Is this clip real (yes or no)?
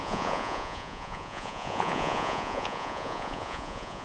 no